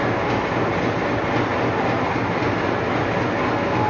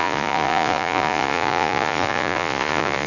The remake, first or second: second